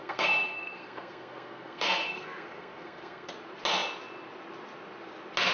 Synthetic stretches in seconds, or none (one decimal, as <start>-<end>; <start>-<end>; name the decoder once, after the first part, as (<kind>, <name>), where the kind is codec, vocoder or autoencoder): 0.0-3.3 (codec, SNAC)